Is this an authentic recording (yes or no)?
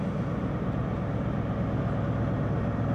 yes